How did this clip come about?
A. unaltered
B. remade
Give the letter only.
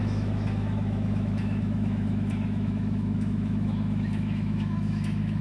B